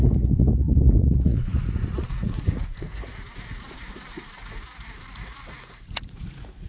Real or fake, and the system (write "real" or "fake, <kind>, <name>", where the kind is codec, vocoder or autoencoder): fake, vocoder, Vocos